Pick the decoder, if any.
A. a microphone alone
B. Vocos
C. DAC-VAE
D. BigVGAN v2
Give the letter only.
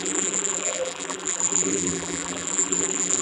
D